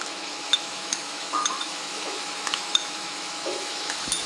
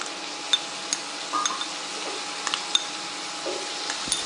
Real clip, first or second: second